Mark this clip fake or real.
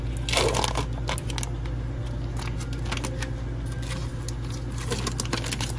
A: real